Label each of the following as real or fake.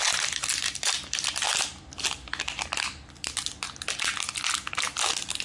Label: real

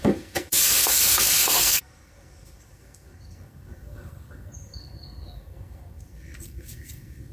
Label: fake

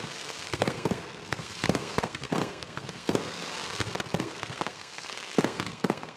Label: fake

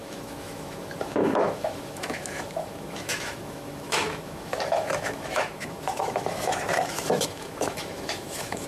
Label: fake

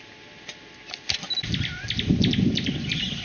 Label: real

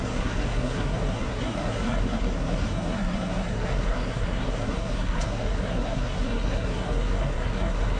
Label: fake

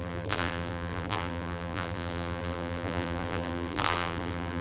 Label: fake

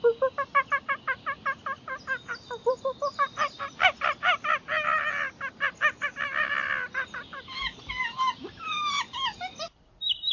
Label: real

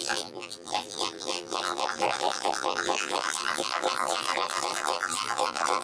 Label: fake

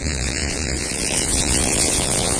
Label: fake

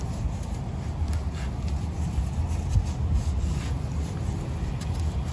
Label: real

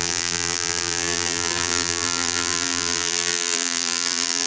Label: fake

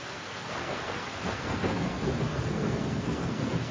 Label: fake